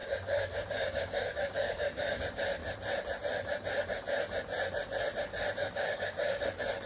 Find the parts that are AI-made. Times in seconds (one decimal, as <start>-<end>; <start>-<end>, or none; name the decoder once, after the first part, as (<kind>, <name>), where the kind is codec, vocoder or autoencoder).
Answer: 0.0-2.2 (codec, DAC); 5.6-6.4